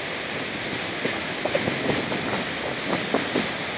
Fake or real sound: fake